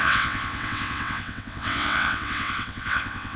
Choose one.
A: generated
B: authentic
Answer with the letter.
A